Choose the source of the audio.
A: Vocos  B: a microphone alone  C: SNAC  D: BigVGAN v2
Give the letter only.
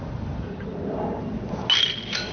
B